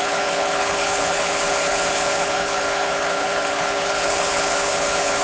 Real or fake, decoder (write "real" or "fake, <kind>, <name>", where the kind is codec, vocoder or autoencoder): fake, codec, HILCodec